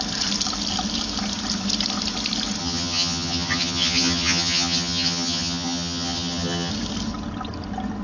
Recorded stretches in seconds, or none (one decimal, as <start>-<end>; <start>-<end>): 0.0-2.6; 6.7-8.0